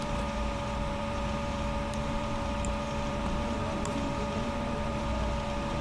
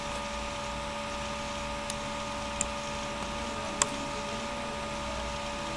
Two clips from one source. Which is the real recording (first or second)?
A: second